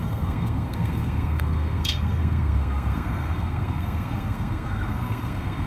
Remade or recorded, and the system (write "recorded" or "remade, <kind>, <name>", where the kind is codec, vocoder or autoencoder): remade, codec, SNAC